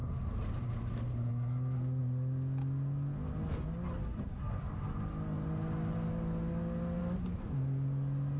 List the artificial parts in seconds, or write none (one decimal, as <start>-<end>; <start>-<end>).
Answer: 0.0-1.3